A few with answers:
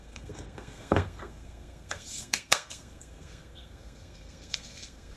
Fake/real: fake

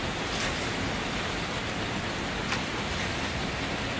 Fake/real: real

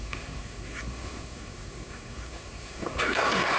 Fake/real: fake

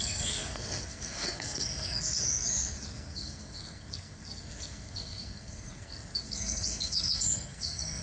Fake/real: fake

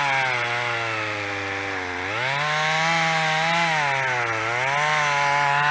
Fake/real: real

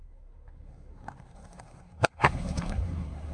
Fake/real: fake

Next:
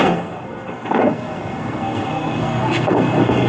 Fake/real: fake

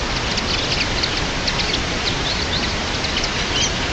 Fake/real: real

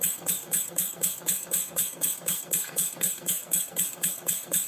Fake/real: fake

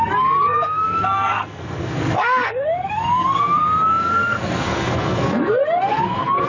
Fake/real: fake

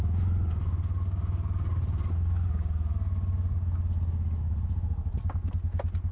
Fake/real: real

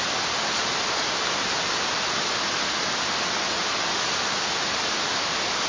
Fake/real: real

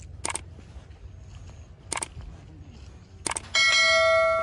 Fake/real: real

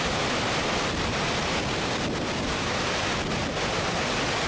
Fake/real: real